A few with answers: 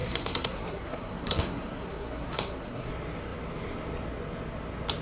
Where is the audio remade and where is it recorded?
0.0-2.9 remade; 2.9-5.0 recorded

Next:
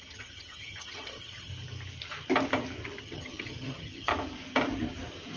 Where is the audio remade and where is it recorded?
0.0-1.5 remade; 1.5-3.0 recorded; 3.0-4.1 remade; 4.1-5.4 recorded

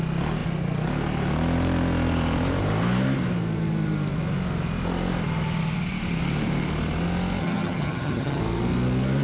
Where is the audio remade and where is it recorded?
0.0-7.4 recorded; 7.4-8.4 remade; 8.4-9.2 recorded